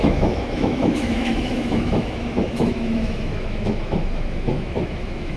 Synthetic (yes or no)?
yes